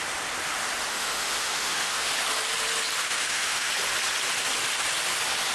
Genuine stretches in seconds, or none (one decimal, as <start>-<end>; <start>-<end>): 0.0-0.9; 2.1-3.0; 3.7-5.5